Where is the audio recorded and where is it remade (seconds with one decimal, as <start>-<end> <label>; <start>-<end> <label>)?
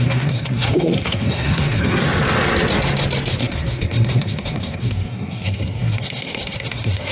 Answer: 0.0-2.0 remade; 2.0-3.4 recorded; 3.4-7.1 remade